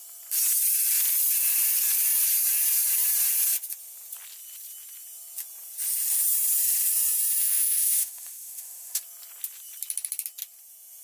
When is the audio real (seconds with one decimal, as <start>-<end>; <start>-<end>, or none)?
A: 0.0-7.4; 9.0-11.0